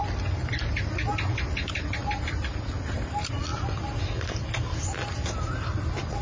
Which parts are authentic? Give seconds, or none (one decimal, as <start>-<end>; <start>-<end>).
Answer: 0.0-6.2